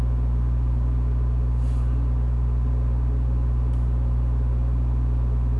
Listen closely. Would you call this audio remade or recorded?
recorded